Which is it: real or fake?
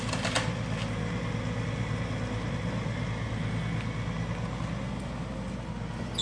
real